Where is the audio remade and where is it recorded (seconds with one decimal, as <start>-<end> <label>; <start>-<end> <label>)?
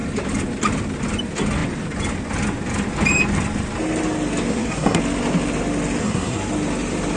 0.0-4.5 recorded; 4.5-5.0 remade; 5.0-6.0 recorded; 6.0-6.5 remade; 6.5-7.2 recorded